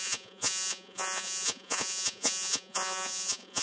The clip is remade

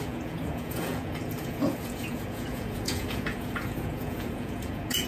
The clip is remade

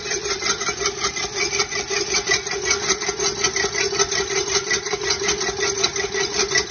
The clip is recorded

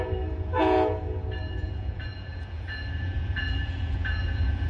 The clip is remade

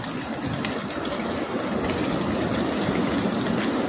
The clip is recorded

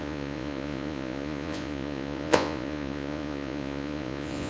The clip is remade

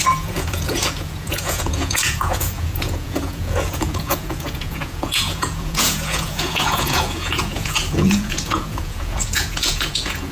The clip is remade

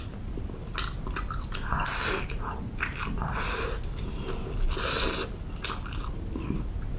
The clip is recorded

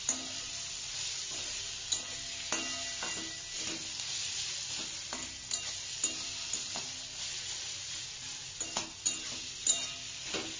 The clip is recorded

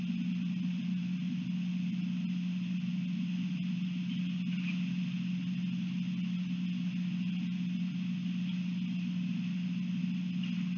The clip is recorded